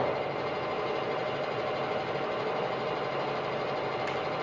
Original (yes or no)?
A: yes